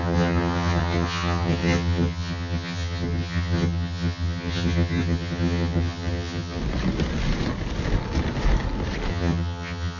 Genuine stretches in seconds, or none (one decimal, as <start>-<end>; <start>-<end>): 6.6-9.1